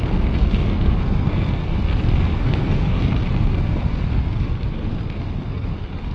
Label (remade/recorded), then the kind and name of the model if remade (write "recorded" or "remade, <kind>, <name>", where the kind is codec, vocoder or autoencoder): remade, codec, SNAC